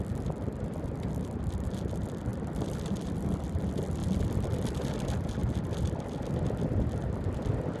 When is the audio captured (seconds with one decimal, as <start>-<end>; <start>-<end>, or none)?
0.0-0.5; 1.4-2.3; 3.3-4.0; 4.9-5.4; 6.3-7.8